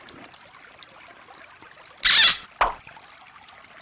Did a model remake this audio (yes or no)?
no